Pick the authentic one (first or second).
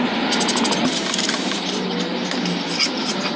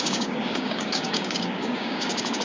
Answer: first